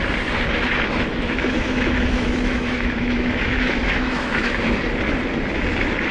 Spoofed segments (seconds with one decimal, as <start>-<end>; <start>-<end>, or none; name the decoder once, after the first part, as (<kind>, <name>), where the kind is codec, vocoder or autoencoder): 1.1-4.8 (autoencoder, DAC-VAE)